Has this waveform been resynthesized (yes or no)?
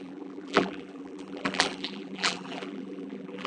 yes